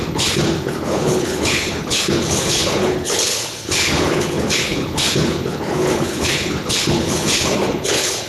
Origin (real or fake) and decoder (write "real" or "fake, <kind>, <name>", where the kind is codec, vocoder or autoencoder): fake, codec, HILCodec